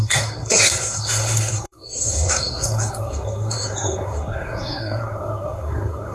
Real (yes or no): no